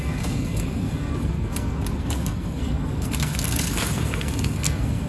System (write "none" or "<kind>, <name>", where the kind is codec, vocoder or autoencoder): codec, SNAC